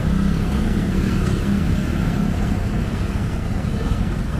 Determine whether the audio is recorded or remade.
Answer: remade